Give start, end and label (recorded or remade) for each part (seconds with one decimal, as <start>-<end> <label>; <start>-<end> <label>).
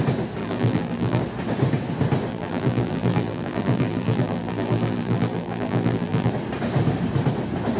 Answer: 0.0-0.4 recorded; 0.4-1.2 remade; 1.2-2.3 recorded; 2.3-6.3 remade; 6.3-7.8 recorded